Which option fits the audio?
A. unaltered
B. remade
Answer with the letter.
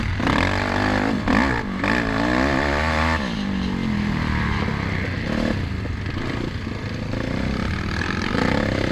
A